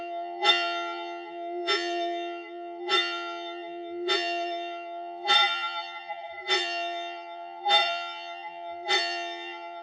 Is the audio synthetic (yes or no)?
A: yes